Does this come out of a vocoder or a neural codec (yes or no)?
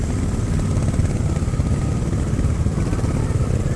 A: no